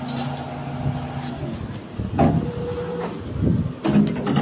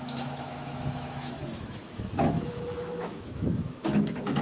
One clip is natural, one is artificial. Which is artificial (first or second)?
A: second